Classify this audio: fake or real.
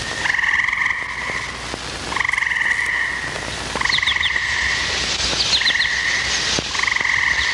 real